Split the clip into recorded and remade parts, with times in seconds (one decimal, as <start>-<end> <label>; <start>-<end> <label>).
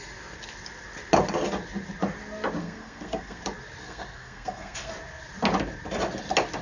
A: 0.0-2.6 recorded; 2.6-3.4 remade; 3.4-3.8 recorded; 3.8-4.9 remade; 4.9-6.6 recorded